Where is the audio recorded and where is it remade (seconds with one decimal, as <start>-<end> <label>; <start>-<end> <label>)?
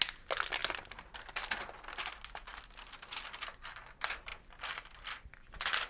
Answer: 0.0-0.6 recorded; 0.6-1.6 remade; 1.6-2.5 recorded; 2.5-3.4 remade; 3.4-4.3 recorded; 4.3-5.9 remade